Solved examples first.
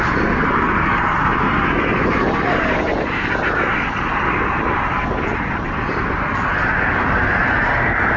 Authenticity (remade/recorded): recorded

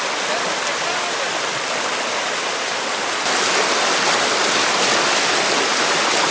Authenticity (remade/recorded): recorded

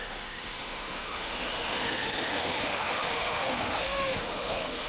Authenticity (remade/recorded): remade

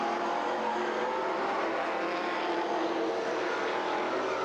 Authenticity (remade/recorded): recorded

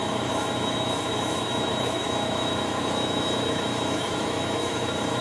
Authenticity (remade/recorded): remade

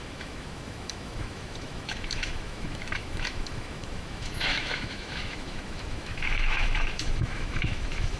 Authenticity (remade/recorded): remade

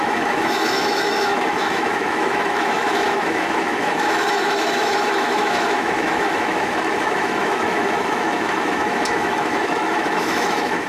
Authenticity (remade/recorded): remade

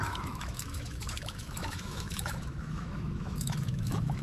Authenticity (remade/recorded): remade